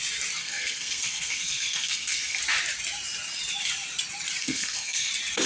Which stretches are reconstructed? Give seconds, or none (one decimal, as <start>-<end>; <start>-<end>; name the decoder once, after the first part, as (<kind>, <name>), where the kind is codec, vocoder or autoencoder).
0.4-2.4 (codec, SNAC); 4.4-5.1